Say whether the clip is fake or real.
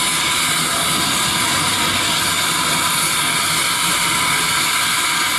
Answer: real